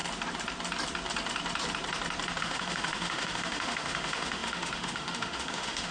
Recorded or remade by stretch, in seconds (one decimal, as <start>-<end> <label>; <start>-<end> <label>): 0.0-2.4 recorded; 2.4-5.9 remade